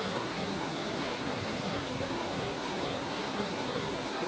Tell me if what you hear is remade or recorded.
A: remade